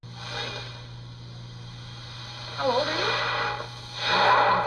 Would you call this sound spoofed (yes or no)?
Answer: no